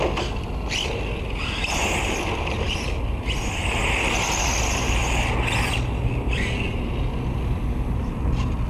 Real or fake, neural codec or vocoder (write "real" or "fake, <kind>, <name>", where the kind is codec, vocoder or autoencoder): real